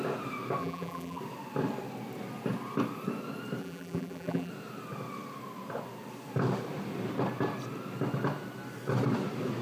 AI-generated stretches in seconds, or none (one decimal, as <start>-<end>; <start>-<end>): 0.6-1.2; 3.6-4.5

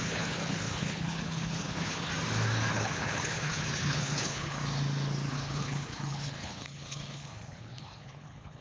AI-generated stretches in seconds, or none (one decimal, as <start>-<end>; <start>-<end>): 0.0-2.1; 2.7-4.6; 5.3-8.6

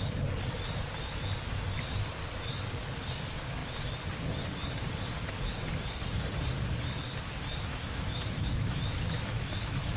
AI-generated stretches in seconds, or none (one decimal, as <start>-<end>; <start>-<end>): 7.7-10.0

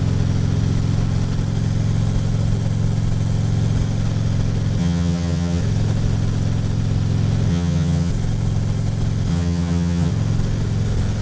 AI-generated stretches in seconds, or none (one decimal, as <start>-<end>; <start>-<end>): 4.8-5.6; 7.5-8.1; 9.3-10.1

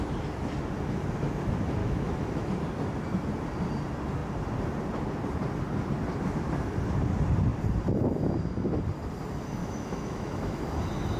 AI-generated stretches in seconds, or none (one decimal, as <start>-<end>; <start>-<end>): 1.8-2.5; 9.6-10.6

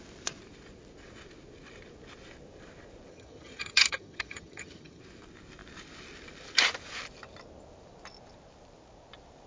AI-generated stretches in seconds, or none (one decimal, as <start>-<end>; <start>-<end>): 3.1-5.0